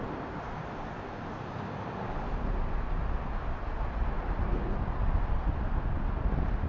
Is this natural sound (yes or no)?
yes